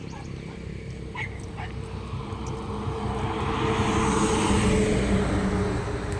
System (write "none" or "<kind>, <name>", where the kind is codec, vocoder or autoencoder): none